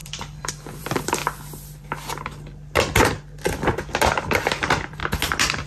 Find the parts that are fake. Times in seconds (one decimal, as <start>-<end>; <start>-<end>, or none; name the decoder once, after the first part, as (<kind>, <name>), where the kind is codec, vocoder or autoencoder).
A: 0.0-1.2 (vocoder, BigVGAN v2); 4.6-5.0